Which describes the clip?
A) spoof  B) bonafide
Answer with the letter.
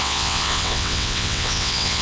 A